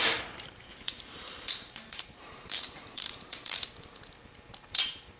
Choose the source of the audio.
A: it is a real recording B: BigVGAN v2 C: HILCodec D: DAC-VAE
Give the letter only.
B